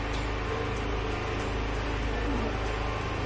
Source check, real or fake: real